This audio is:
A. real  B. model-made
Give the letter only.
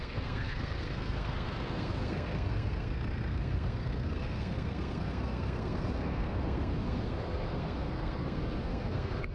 B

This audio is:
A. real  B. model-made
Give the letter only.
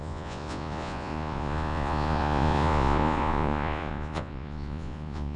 B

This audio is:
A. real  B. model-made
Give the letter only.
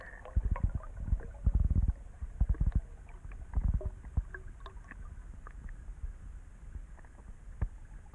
A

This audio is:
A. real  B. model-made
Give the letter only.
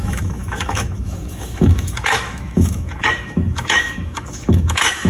B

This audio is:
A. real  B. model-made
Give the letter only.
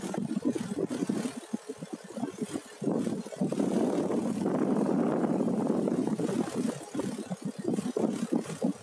A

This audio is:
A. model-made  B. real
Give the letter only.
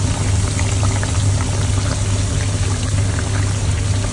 B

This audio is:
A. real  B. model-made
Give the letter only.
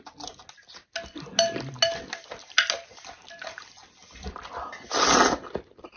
A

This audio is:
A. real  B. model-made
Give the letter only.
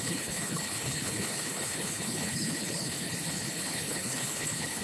B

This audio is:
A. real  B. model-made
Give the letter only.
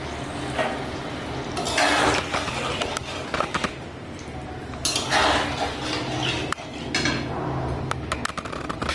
A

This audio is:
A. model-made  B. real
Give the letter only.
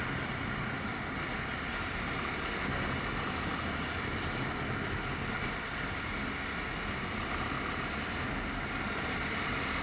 B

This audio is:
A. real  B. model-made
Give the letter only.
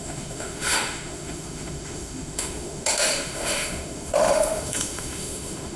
B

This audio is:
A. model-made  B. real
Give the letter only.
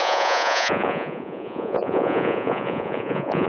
A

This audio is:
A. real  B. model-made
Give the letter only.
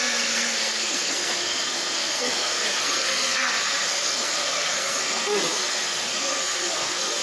B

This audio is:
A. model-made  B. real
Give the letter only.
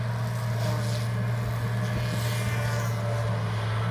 B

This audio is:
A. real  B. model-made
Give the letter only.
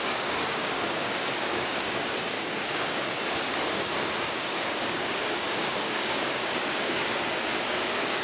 B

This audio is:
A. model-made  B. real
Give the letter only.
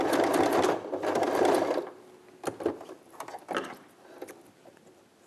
B